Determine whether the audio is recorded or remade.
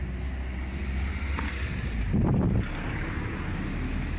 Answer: recorded